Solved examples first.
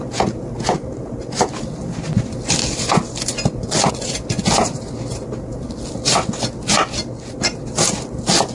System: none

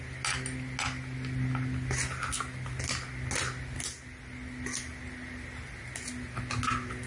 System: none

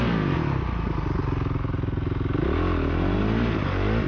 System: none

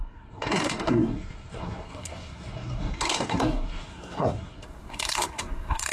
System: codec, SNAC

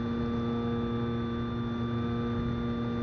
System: none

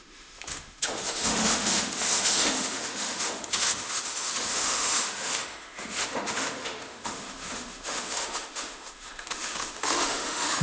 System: autoencoder, DAC-VAE